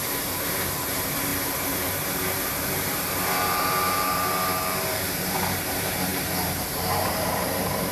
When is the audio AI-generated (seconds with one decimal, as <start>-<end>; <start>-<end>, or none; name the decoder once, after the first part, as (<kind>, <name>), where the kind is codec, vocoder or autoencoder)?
0.0-7.9 (vocoder, BigVGAN v2)